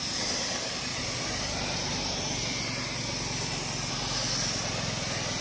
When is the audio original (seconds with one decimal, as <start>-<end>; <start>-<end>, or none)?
0.0-5.4